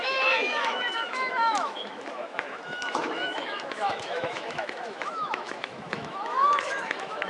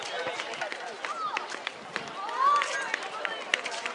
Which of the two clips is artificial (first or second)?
first